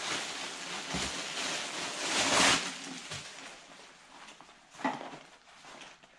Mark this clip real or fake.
real